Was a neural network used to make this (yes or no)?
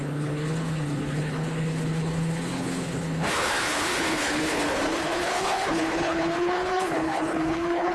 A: yes